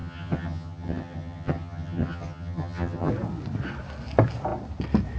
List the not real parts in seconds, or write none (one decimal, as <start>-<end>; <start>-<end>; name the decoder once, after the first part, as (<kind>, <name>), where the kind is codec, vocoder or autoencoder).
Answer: 0.0-3.1 (vocoder, HiFi-GAN)

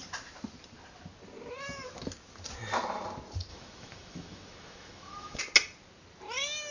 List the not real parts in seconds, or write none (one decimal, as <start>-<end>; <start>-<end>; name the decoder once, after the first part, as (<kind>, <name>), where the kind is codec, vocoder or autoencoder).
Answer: 3.5-5.4 (autoencoder, DAC-VAE)

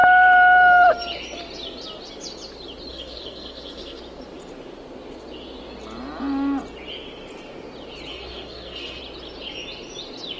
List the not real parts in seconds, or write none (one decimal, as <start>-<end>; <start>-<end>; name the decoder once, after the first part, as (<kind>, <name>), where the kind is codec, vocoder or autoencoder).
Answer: 2.9-4.0 (codec, SNAC); 8.1-9.0

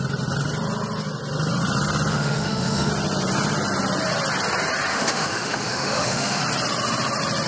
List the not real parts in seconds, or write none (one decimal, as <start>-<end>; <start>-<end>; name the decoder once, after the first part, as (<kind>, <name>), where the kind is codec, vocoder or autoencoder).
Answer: 2.1-2.9 (autoencoder, DAC-VAE); 4.9-6.4

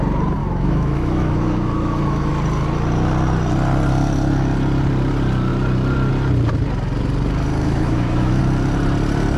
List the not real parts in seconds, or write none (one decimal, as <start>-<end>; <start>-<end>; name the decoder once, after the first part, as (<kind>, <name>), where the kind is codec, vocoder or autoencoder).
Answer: 0.4-2.3 (autoencoder, DAC-VAE); 7.6-8.4